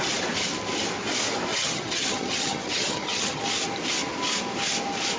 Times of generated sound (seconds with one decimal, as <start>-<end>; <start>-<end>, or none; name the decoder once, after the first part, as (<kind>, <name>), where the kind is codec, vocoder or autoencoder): 1.5-3.4 (vocoder, HiFi-GAN)